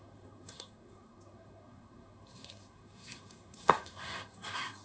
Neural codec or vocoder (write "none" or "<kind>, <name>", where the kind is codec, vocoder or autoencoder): codec, SNAC